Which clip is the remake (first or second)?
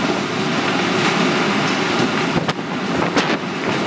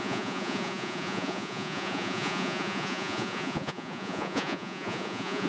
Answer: second